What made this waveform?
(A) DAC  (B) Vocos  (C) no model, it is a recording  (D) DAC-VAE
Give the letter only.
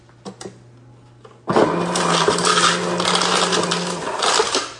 C